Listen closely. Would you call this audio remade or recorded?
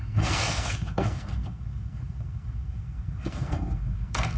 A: remade